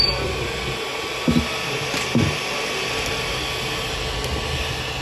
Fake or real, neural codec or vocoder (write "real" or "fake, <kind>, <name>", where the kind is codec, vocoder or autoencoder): real